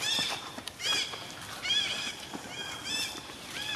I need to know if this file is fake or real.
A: real